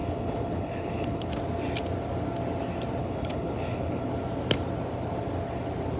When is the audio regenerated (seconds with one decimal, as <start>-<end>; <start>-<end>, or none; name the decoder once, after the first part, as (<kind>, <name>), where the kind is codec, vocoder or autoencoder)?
0.0-1.3 (codec, HILCodec); 3.0-4.1